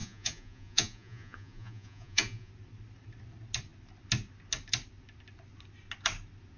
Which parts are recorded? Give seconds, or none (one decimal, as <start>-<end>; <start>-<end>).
2.5-6.6